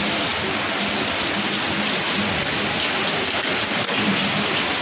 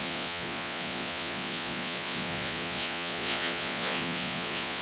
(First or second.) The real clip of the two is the first